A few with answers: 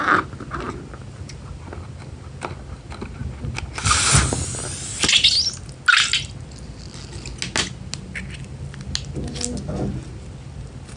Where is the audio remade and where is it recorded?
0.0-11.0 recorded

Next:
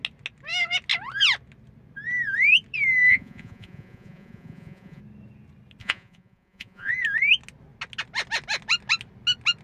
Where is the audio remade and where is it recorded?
0.0-3.1 recorded; 3.1-5.0 remade; 5.0-5.8 recorded; 5.8-6.9 remade; 6.9-9.6 recorded

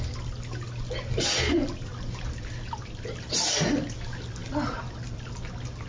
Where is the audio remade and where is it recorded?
0.0-5.9 recorded

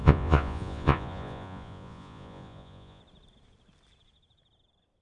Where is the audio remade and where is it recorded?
0.0-3.0 remade; 3.0-5.0 recorded

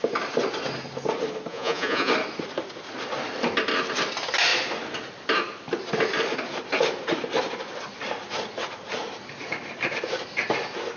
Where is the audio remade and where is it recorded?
0.0-1.5 recorded; 1.5-2.1 remade; 2.1-11.0 recorded